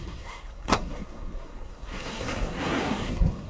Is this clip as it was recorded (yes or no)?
no